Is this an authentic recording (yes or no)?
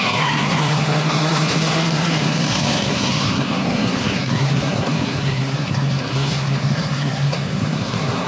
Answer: no